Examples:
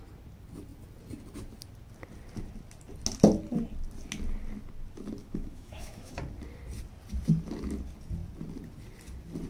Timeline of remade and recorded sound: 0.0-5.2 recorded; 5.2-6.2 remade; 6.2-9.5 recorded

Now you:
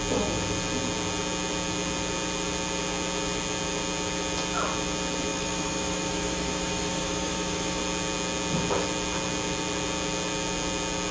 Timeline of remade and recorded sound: 0.0-5.3 recorded; 5.3-7.8 remade; 7.8-11.1 recorded